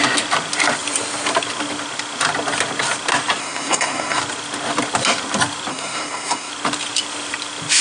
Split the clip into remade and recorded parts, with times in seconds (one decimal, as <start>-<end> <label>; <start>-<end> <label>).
0.0-3.4 recorded; 3.4-4.2 remade; 4.2-5.7 recorded; 5.7-6.5 remade; 6.5-7.8 recorded